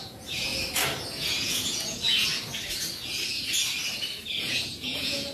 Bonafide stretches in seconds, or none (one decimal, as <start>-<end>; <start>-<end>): 0.5-1.1; 2.3-4.4

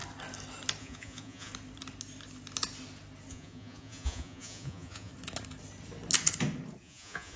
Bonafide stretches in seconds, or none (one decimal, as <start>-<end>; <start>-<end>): 0.0-0.8; 1.5-3.3; 5.1-6.8

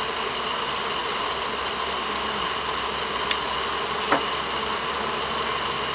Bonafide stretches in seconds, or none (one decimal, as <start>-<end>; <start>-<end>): 0.0-5.9